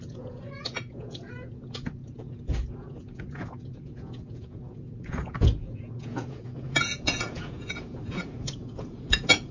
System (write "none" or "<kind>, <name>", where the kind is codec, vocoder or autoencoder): vocoder, Vocos